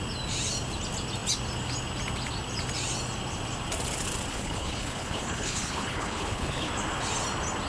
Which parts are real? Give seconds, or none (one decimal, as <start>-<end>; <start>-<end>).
0.0-4.3; 6.7-7.7